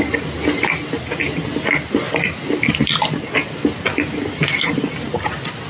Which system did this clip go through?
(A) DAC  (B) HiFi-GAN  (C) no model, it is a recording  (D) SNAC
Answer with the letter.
C